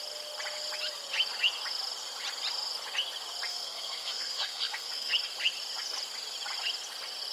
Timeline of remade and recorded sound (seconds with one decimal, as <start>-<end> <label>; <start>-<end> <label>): 0.0-3.5 recorded; 3.5-5.1 remade; 5.1-7.3 recorded

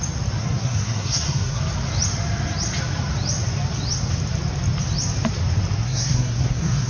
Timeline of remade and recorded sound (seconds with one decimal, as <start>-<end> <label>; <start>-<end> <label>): 0.0-0.4 recorded; 0.4-1.6 remade; 1.6-5.8 recorded; 5.8-6.9 remade